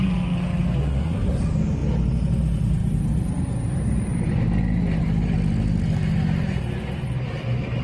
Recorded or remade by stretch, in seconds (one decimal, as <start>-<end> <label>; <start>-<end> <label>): 0.0-0.8 recorded; 0.8-1.4 remade; 1.4-7.8 recorded